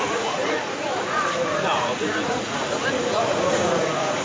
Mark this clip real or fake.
fake